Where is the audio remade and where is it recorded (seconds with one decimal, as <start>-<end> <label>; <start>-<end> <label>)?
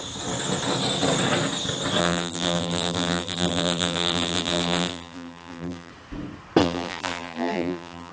0.0-2.0 recorded; 2.0-5.9 remade; 5.9-6.6 recorded; 6.6-8.1 remade